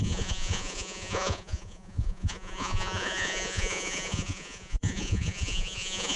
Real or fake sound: fake